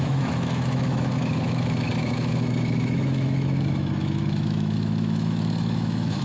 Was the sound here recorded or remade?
remade